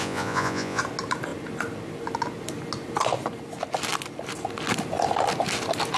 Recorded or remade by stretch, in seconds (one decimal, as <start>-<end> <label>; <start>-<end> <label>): 0.0-0.8 remade; 0.8-6.0 recorded